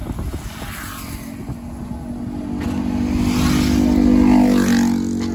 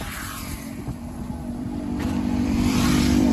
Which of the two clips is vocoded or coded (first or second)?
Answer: second